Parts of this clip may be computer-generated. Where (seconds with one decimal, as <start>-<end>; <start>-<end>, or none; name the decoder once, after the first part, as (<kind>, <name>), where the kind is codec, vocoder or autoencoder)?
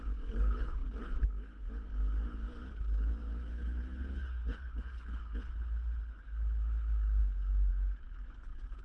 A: 0.0-8.8 (codec, HILCodec)